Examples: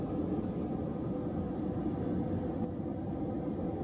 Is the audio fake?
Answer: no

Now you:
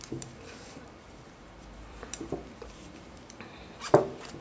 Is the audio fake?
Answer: yes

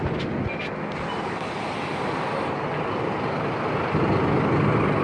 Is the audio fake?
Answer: no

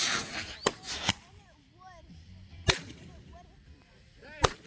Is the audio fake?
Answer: yes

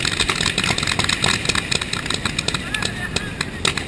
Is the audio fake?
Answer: no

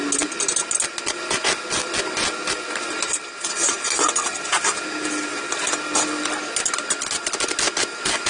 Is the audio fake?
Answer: no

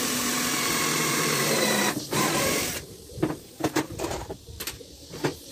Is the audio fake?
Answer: yes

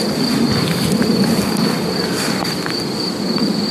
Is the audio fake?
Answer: yes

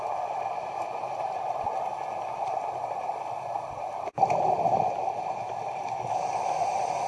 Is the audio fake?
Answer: no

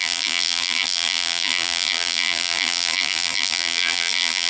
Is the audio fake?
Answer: yes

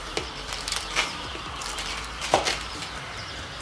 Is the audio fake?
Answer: yes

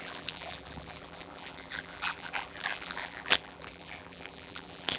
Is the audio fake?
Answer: yes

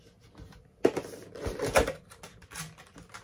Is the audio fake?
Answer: no